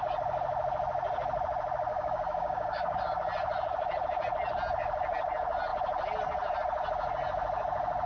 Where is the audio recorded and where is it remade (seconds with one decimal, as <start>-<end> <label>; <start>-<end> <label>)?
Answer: 0.0-1.9 recorded; 1.9-3.0 remade; 3.0-8.1 recorded